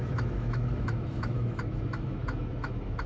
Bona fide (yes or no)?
no